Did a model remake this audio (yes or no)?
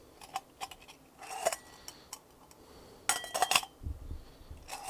no